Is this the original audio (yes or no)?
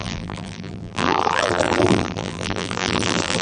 no